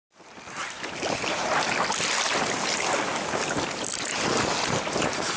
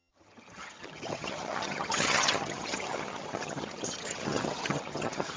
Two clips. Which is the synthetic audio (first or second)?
second